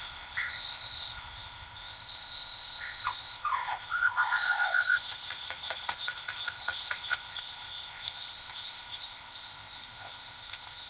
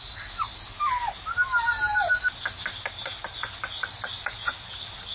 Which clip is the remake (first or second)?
first